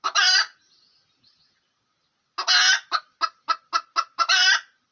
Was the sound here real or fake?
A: real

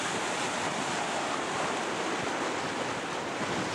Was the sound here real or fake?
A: real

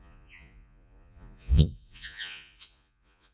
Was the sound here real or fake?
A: fake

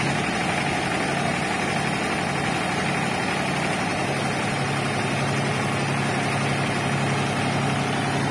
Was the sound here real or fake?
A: real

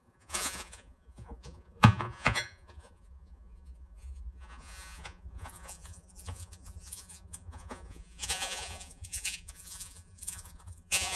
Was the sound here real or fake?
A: fake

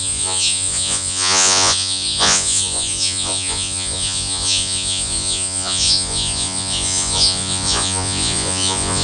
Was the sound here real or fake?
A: fake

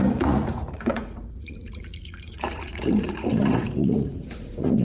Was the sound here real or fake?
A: fake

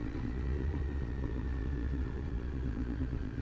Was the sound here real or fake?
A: fake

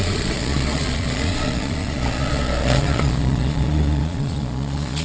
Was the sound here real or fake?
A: fake